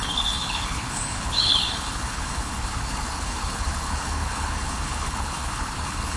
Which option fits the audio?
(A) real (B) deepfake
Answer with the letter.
B